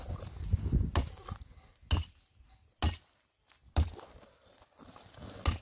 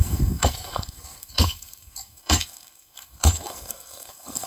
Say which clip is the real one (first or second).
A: first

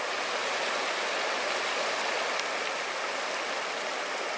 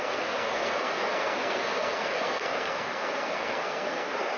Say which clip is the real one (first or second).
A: first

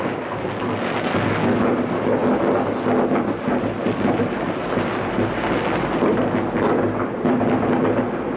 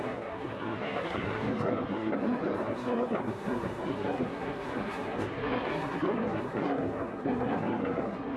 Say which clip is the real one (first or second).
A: first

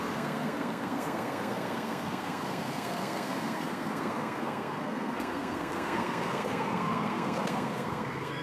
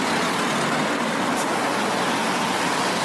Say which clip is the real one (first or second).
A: second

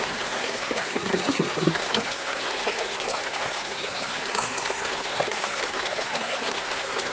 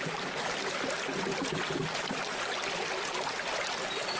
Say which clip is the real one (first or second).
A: second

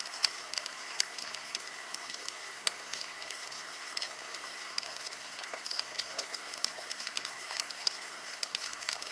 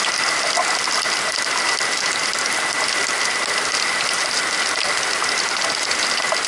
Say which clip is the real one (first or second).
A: second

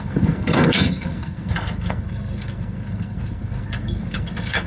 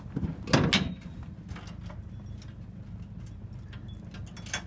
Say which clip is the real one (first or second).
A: second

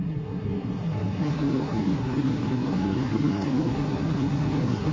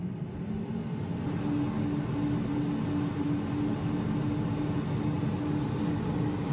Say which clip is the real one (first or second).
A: second